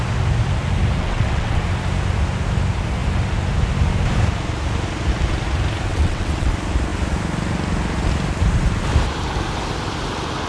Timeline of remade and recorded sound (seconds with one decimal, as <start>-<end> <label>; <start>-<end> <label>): 0.0-1.0 recorded; 1.0-1.6 remade; 1.6-5.9 recorded; 5.9-6.5 remade; 6.5-10.5 recorded